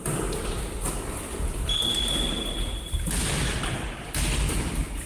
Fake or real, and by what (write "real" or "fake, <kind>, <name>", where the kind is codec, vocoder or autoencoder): real